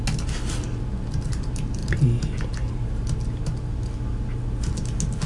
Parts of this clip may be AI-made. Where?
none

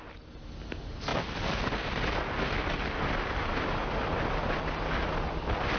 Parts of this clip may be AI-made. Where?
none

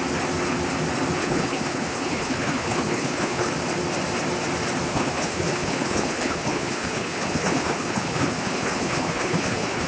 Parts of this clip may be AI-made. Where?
1.2-3.5 (codec, HILCodec); 4.9-9.9